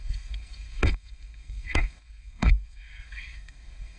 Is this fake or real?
fake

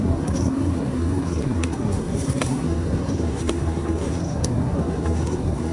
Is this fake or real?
fake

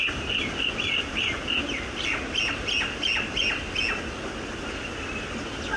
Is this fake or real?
real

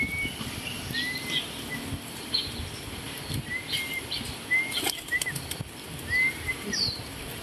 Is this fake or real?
real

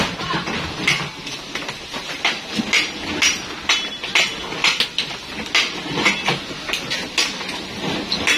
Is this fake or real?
real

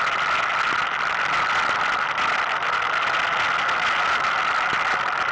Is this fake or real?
real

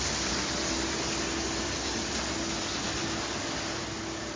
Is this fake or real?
real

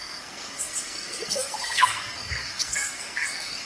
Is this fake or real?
fake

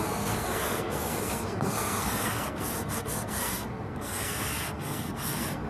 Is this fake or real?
fake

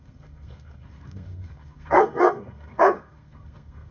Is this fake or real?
fake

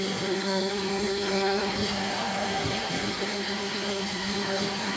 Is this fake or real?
fake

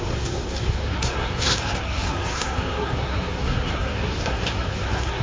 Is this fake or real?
fake